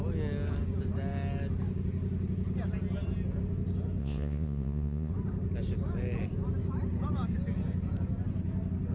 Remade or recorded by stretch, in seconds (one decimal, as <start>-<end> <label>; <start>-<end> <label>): 0.0-4.0 recorded; 4.0-5.1 remade; 5.1-8.9 recorded